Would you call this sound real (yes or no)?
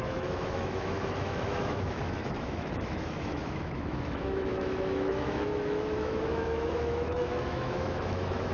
no